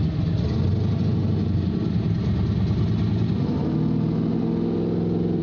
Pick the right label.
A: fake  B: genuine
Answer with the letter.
B